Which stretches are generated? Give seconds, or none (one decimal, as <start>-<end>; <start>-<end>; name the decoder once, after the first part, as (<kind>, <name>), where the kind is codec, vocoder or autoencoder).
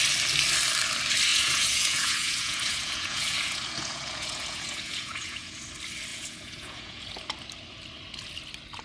1.3-5.6 (vocoder, Vocos); 6.1-7.1